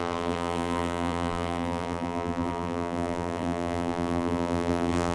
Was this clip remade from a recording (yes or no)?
yes